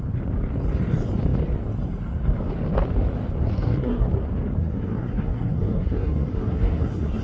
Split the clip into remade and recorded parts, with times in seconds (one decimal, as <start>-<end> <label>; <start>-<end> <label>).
0.0-3.5 recorded; 3.5-4.1 remade; 4.1-4.6 recorded; 4.6-7.2 remade